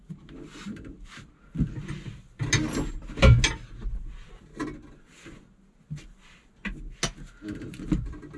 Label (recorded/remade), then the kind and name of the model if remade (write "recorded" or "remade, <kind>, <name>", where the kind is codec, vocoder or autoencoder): recorded